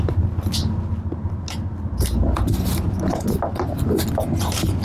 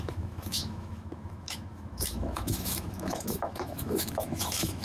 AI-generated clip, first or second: second